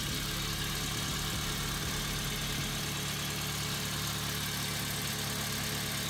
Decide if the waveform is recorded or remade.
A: recorded